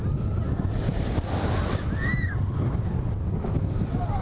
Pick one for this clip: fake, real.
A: fake